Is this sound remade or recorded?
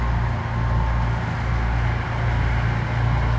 recorded